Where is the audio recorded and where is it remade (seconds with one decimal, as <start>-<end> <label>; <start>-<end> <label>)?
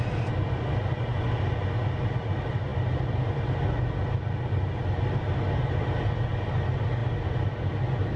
0.0-8.2 recorded